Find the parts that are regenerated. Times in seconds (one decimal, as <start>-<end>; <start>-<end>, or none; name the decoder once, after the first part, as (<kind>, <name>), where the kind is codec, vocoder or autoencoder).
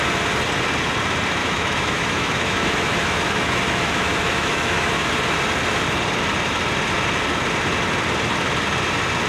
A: 1.4-5.1 (autoencoder, DAC-VAE)